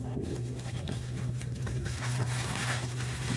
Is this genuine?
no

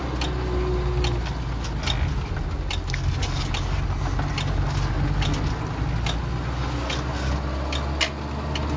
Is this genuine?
yes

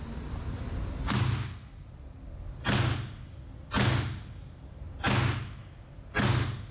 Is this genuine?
yes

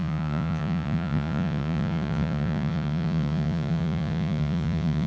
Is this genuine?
no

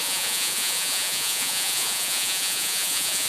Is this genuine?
no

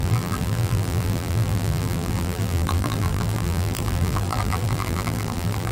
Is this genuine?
no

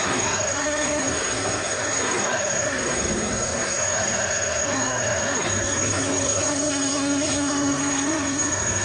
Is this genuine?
no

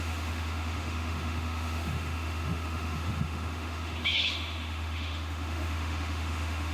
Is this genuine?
no